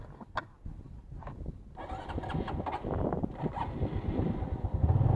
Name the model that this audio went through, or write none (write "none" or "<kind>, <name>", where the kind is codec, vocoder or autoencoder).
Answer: none